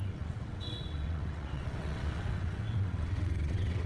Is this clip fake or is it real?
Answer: fake